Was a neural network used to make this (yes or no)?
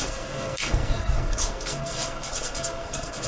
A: yes